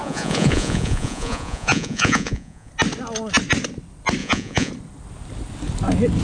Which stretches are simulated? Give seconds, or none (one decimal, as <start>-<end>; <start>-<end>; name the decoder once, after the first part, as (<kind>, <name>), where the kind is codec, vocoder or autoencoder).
0.0-2.7 (vocoder, Vocos); 4.2-4.7